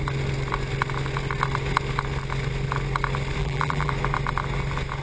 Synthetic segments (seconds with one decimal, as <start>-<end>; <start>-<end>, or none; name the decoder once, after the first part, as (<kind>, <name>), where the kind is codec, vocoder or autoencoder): 3.4-3.9 (vocoder, BigVGAN v2)